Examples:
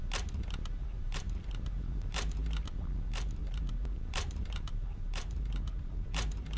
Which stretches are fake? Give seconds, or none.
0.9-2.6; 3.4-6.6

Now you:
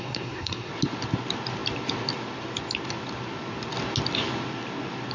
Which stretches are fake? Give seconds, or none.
0.0-0.7

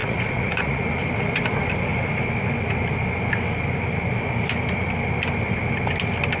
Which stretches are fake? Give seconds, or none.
0.0-0.9

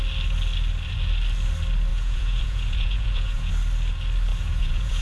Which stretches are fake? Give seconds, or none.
1.9-3.5; 4.3-5.0

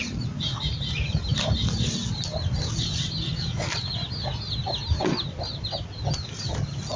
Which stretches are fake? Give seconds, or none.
none